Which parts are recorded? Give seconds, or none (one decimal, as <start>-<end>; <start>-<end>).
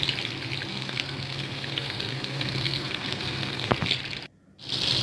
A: 0.0-0.7; 3.7-5.0